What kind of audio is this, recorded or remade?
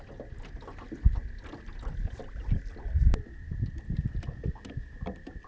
recorded